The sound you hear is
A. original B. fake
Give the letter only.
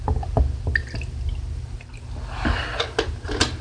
A